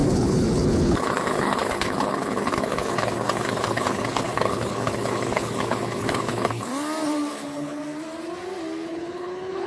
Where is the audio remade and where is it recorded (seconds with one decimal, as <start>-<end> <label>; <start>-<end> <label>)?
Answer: 0.0-6.7 remade; 6.7-7.3 recorded; 7.3-7.8 remade; 7.8-8.9 recorded; 8.9-9.7 remade